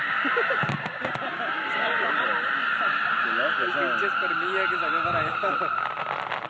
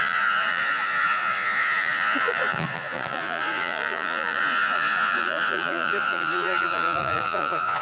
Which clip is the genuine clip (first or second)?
first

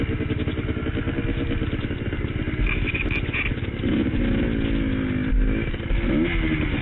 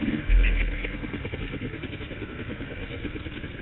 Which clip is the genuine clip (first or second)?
first